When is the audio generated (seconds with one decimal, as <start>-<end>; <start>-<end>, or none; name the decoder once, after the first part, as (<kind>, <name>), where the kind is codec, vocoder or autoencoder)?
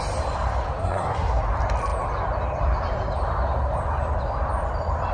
0.8-1.4 (codec, SNAC)